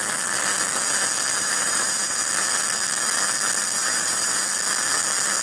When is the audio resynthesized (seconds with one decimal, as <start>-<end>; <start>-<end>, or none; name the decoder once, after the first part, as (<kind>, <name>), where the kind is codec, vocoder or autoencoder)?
1.4-2.2 (vocoder, BigVGAN v2); 3.8-4.4